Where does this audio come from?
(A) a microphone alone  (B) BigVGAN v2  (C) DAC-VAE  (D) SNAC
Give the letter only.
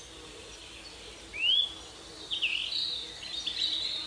A